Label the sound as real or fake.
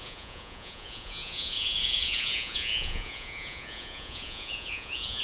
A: fake